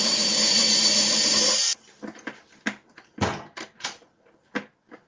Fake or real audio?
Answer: fake